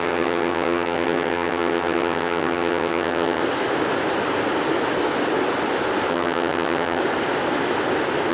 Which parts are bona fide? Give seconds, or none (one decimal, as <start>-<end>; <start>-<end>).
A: 3.4-6.1; 7.0-8.3